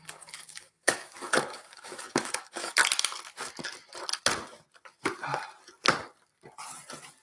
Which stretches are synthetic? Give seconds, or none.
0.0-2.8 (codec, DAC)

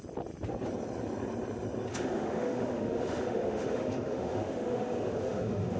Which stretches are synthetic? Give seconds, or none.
1.9-5.8 (autoencoder, DAC-VAE)

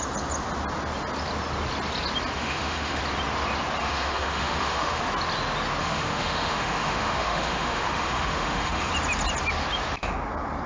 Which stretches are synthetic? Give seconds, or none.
2.4-3.0 (autoencoder, DAC-VAE); 3.8-5.0; 5.8-8.9

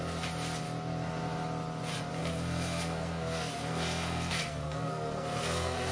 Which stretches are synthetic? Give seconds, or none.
2.2-5.9 (codec, SNAC)

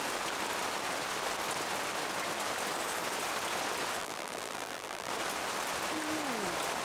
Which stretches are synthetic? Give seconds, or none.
4.0-5.1 (vocoder, BigVGAN v2)

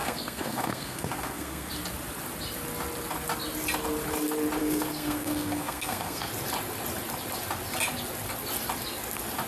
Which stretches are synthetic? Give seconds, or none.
0.0-1.7 (codec, SNAC); 4.6-6.3

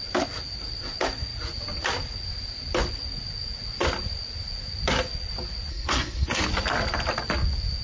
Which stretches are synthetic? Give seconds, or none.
5.7-6.4 (codec, SNAC)

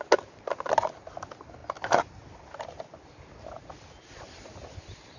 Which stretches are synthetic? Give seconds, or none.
none